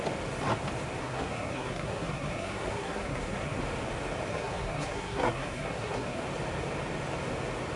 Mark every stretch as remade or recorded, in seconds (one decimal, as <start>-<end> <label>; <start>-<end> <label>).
0.0-1.0 recorded; 1.0-3.6 remade; 3.6-4.3 recorded; 4.3-6.2 remade; 6.2-7.8 recorded